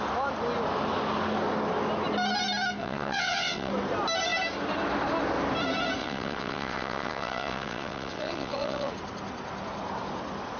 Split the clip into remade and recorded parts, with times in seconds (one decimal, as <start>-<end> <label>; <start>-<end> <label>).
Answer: 0.0-2.8 recorded; 2.8-3.7 remade; 3.7-6.0 recorded; 6.0-8.9 remade; 8.9-10.6 recorded